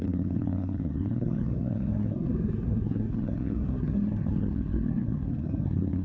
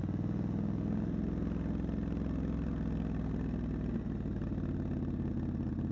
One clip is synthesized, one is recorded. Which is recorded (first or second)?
second